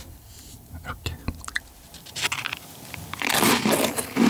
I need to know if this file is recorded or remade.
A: remade